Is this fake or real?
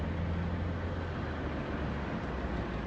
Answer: real